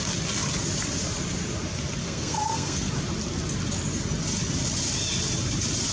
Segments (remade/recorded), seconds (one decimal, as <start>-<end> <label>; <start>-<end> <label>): 0.0-2.0 recorded; 2.0-2.9 remade; 2.9-5.9 recorded